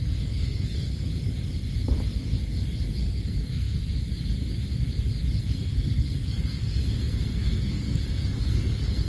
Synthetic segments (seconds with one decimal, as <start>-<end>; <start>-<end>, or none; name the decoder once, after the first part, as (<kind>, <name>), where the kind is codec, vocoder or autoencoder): 0.0-1.1 (codec, SNAC); 2.9-3.9; 5.4-9.1